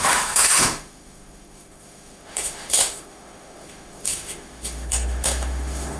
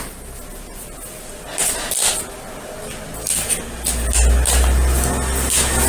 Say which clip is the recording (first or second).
second